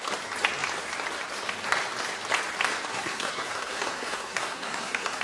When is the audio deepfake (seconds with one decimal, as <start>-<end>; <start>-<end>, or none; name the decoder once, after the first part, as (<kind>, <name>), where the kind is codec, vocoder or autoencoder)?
2.9-5.2 (codec, SNAC)